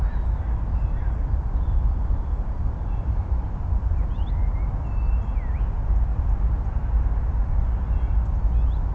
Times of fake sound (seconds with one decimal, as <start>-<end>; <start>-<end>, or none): 1.7-4.3; 6.1-6.7